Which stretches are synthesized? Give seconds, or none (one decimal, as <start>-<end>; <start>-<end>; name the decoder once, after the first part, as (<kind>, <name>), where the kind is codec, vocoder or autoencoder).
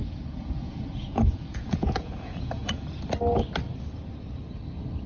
0.0-3.1 (vocoder, Vocos)